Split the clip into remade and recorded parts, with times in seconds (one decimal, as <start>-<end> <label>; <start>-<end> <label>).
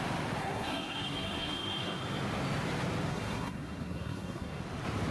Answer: 0.0-0.4 recorded; 0.4-2.0 remade; 2.0-3.1 recorded; 3.1-4.6 remade; 4.6-5.1 recorded